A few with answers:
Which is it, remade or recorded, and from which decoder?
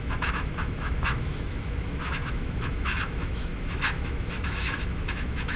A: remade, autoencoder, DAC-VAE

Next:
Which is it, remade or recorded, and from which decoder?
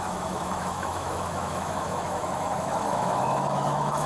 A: remade, autoencoder, DAC-VAE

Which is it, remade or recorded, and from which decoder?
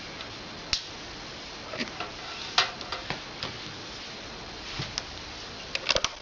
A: recorded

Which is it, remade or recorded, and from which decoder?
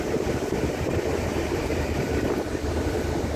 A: remade, vocoder, BigVGAN v2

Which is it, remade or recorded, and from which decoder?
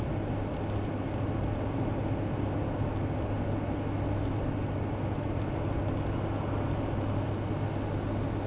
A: recorded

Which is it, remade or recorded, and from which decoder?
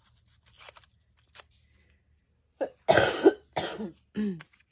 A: recorded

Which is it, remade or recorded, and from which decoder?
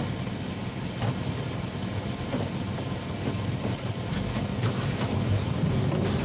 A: recorded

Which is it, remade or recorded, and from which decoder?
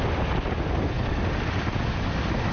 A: recorded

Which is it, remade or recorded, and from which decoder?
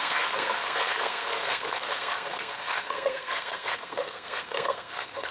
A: remade, codec, SNAC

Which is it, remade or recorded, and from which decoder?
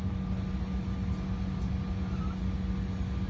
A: recorded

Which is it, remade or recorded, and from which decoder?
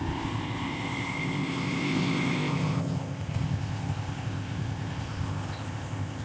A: remade, codec, ZipCodec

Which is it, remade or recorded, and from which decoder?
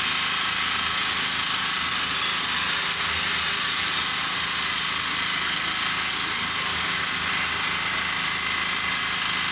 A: recorded